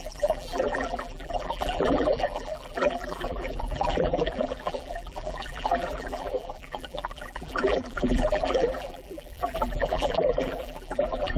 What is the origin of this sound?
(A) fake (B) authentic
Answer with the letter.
A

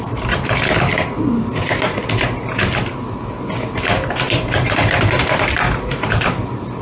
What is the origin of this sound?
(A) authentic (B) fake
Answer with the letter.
B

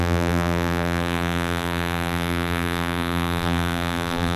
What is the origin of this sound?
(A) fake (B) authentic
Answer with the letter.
A